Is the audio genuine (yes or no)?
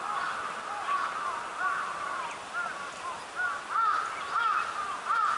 yes